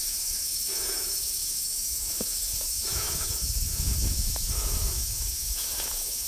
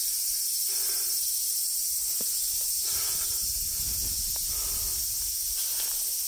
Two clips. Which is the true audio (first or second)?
second